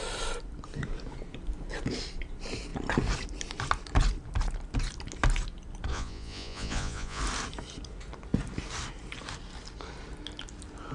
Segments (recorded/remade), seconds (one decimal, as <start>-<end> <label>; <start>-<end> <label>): 0.0-5.9 recorded; 5.9-7.2 remade; 7.2-10.9 recorded